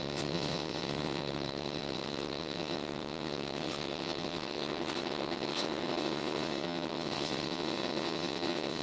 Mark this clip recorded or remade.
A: remade